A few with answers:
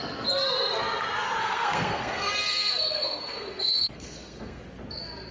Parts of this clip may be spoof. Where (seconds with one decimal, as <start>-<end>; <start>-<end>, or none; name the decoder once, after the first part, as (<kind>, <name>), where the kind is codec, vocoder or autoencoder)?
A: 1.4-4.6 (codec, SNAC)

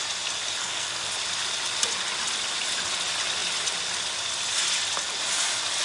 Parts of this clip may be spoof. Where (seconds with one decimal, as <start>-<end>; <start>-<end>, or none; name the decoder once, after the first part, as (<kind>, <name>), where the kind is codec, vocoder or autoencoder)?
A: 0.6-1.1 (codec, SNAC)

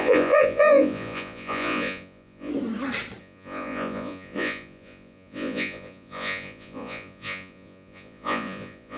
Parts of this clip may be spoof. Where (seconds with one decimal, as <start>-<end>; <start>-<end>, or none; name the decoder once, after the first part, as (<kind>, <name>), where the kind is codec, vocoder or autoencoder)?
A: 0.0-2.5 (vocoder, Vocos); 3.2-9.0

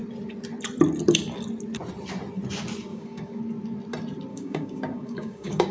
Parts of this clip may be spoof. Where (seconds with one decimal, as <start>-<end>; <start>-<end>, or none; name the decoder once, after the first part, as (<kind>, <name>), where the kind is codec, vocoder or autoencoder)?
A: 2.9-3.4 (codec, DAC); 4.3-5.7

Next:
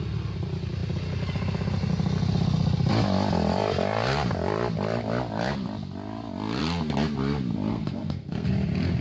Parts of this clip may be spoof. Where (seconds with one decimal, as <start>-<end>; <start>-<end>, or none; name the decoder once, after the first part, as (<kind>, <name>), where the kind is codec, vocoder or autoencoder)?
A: 7.7-8.5 (codec, SNAC)

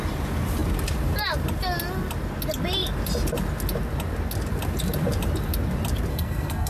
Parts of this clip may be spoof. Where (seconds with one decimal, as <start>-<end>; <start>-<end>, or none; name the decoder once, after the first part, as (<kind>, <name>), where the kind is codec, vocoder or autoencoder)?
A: 6.1-6.7 (codec, SNAC)

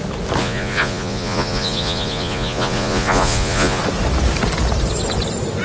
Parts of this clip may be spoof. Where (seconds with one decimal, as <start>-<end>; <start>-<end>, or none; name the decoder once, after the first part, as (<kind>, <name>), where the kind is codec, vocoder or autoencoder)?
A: 0.4-3.8 (vocoder, Vocos)